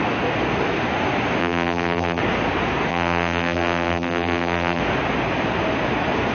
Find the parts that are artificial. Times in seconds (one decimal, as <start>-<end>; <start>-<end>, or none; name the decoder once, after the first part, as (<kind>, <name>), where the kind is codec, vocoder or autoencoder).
1.4-2.2 (vocoder, BigVGAN v2); 2.9-4.8

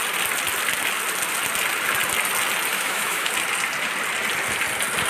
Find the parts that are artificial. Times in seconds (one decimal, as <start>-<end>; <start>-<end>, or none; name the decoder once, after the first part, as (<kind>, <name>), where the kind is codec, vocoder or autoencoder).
2.7-3.3 (autoencoder, DAC-VAE)

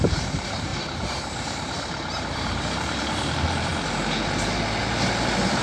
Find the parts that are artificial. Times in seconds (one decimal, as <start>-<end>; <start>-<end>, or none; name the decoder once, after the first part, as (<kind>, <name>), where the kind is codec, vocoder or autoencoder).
0.0-3.7 (vocoder, BigVGAN v2); 4.8-5.6

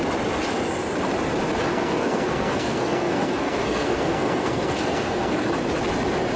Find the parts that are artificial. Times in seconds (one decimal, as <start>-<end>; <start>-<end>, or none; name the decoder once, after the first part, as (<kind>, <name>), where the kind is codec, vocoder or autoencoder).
1.7-5.5 (codec, SNAC)

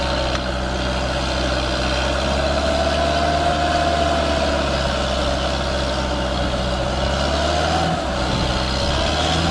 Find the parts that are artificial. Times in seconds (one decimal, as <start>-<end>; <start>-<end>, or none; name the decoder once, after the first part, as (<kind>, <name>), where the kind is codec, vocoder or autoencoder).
none

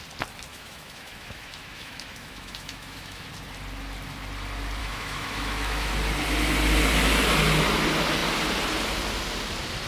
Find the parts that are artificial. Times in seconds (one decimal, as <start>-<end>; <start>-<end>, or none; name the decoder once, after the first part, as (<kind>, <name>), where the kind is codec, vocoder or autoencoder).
0.5-3.3 (autoencoder, DAC-VAE); 4.8-5.9